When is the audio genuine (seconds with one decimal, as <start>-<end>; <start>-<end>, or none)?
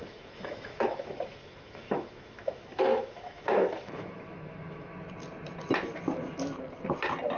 4.9-7.4